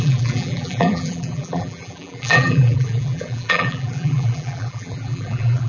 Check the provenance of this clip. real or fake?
fake